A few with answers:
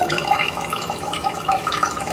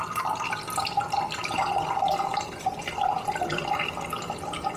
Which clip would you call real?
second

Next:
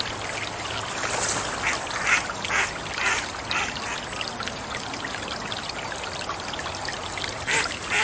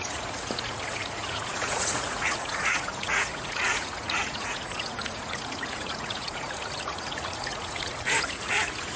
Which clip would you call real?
first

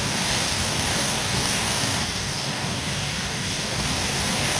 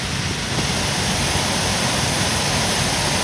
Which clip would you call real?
second